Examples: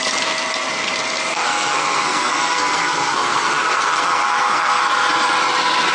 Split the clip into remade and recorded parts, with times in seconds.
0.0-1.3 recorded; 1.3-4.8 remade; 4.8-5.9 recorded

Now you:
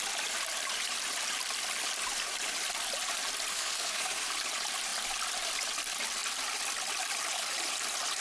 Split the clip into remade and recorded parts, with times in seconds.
0.0-3.5 recorded; 3.5-4.3 remade; 4.3-8.2 recorded

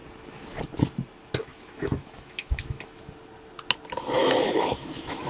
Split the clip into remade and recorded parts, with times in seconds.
0.0-1.5 recorded; 1.5-3.1 remade; 3.1-4.2 recorded; 4.2-5.3 remade

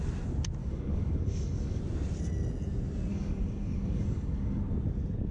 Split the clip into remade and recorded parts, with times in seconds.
0.0-0.6 recorded; 0.6-1.8 remade; 1.8-3.1 recorded; 3.1-4.6 remade; 4.6-5.3 recorded

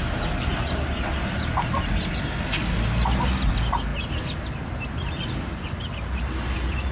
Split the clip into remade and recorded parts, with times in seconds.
0.0-6.9 recorded

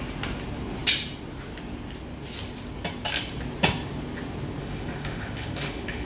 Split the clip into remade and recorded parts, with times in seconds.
0.0-4.6 recorded; 4.6-6.1 remade

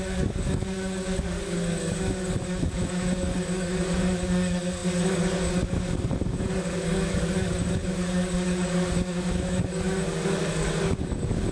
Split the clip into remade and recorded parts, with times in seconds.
0.0-11.5 remade

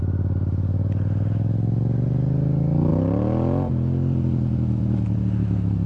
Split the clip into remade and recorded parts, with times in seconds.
0.0-5.9 recorded